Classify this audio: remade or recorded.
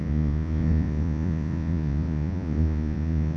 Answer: remade